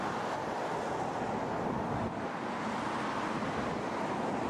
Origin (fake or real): real